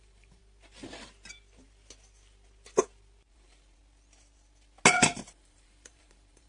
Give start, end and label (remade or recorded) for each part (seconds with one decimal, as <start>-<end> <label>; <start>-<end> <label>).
0.0-0.4 remade; 0.4-3.3 recorded; 3.3-3.8 remade; 3.8-4.9 recorded; 4.9-6.5 remade